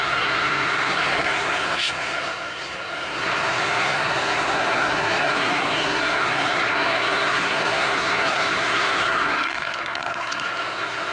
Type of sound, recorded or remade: remade